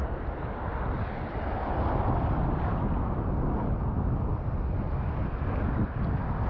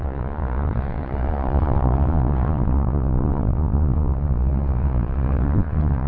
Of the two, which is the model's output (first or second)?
second